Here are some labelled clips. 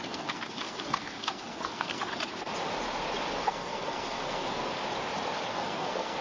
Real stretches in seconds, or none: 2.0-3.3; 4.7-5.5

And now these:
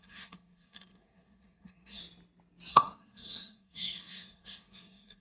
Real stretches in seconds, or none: 2.0-2.7

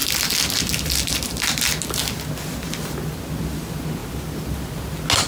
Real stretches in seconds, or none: 0.0-5.3

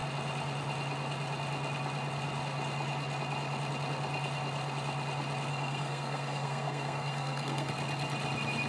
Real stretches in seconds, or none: 0.0-5.5; 7.7-8.7

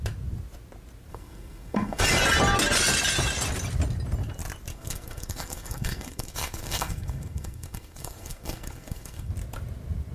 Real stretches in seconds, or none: 0.0-1.1; 2.0-4.7; 9.3-10.1